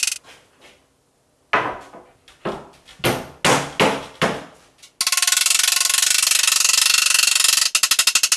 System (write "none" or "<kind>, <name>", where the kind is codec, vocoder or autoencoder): none